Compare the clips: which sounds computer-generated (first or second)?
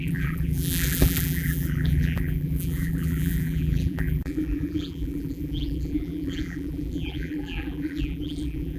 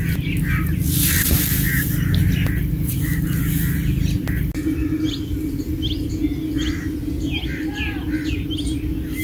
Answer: first